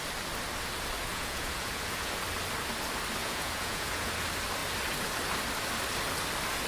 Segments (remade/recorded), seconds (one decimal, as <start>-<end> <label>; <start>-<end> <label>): 0.0-1.1 recorded; 1.1-2.1 remade; 2.1-3.2 recorded; 3.2-4.1 remade; 4.1-6.7 recorded